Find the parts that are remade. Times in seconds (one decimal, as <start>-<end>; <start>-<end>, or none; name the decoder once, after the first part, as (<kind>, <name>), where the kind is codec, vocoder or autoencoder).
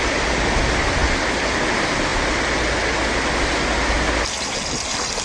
none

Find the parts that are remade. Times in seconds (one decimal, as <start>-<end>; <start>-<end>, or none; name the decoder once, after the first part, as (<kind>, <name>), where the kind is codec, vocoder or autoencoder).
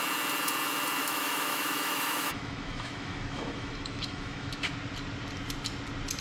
1.0-4.7 (autoencoder, DAC-VAE)